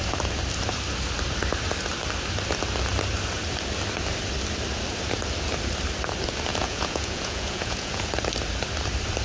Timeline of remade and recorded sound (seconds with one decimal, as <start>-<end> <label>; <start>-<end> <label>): 0.0-6.5 recorded; 6.5-8.1 remade; 8.1-9.2 recorded